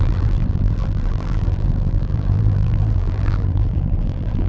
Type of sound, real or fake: fake